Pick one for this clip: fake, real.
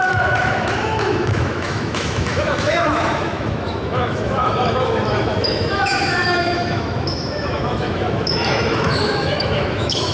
fake